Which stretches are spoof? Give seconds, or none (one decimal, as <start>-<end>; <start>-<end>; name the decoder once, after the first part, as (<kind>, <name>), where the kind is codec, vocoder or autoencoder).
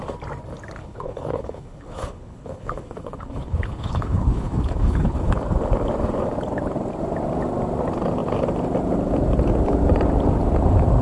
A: 0.8-5.3 (codec, HILCodec)